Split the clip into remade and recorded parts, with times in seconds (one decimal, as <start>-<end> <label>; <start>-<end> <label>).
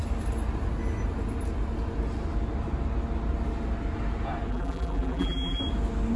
0.0-4.5 recorded; 4.5-5.6 remade; 5.6-6.2 recorded